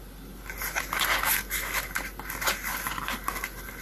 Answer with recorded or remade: recorded